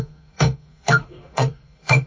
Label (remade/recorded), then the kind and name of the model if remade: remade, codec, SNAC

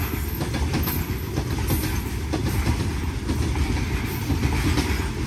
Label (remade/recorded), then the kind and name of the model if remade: recorded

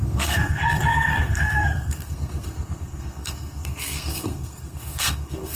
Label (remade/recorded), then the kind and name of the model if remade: remade, codec, SNAC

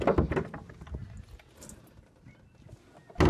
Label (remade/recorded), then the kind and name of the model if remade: recorded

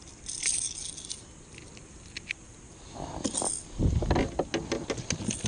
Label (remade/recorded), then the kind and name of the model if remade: recorded